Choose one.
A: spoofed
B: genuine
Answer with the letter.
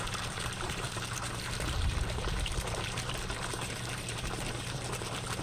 A